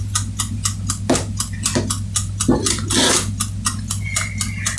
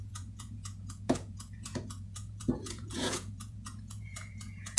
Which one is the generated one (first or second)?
second